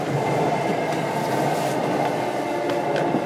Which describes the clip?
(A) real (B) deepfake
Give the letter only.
A